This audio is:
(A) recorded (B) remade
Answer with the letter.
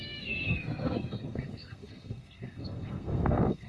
B